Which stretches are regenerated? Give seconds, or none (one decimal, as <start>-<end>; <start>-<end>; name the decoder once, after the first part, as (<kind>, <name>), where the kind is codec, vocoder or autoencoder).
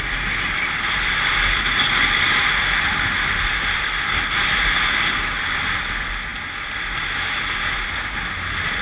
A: none